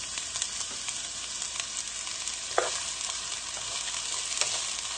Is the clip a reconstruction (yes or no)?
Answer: no